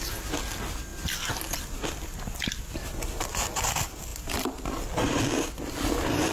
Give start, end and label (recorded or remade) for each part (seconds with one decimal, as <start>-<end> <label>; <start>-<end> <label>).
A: 0.0-6.3 recorded